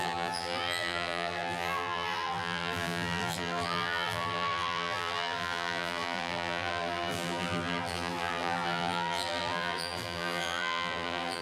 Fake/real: fake